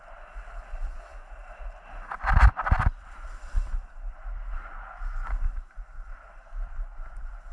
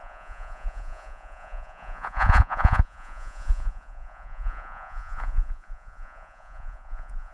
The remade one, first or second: second